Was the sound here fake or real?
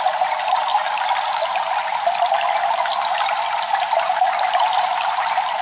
real